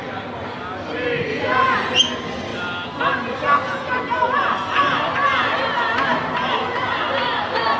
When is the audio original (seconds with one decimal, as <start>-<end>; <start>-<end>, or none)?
0.0-1.3; 2.0-7.8